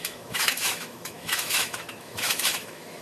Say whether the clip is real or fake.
fake